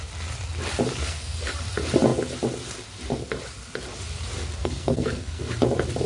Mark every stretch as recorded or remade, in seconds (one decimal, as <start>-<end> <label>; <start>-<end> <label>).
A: 0.0-1.0 recorded; 1.0-1.5 remade; 1.5-4.6 recorded; 4.6-5.5 remade; 5.5-6.1 recorded